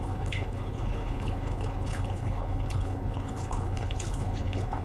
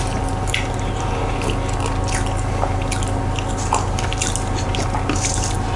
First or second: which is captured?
second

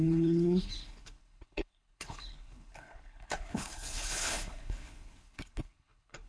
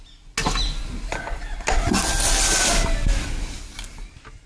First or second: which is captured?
second